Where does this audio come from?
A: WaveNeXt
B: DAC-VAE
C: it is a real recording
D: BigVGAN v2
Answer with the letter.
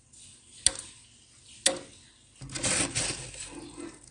C